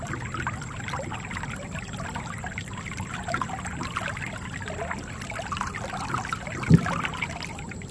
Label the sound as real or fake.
real